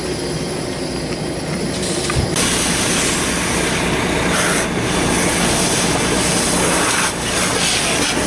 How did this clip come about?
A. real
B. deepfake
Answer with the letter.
A